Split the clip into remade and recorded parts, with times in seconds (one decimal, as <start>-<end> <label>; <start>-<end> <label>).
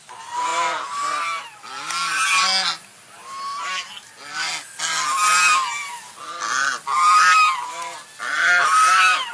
0.0-9.3 recorded